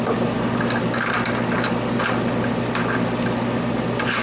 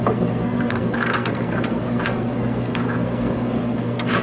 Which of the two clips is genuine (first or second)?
first